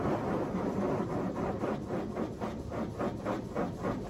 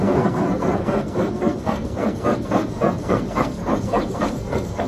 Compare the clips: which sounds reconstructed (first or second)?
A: second